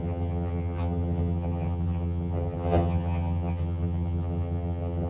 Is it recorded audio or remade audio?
remade